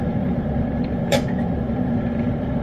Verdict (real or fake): fake